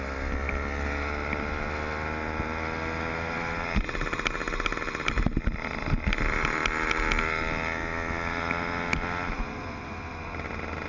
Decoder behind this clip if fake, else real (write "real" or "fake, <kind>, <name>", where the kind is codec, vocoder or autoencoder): real